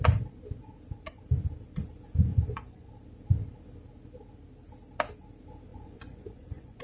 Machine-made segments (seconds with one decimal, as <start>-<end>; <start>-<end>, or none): 2.3-2.9; 5.7-6.8